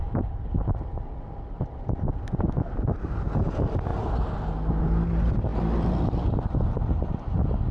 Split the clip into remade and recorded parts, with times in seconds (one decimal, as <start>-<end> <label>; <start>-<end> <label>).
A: 0.0-7.7 recorded